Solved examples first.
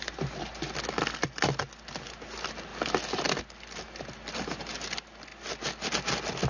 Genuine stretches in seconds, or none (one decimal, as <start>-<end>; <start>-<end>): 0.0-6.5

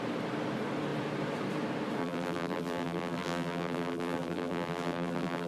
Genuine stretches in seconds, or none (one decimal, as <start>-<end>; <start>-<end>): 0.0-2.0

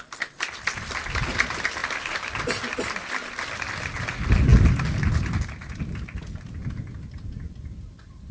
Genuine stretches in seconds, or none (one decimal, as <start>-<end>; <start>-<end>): 0.0-8.3

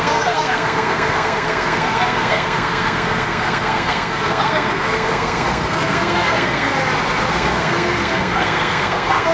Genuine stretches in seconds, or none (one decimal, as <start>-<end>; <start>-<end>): 6.7-7.3

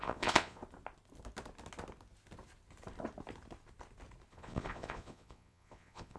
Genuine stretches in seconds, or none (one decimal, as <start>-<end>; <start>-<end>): 0.6-4.3